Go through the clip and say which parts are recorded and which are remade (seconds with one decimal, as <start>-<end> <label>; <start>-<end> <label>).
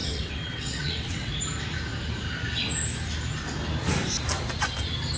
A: 0.0-1.3 remade; 1.3-5.2 recorded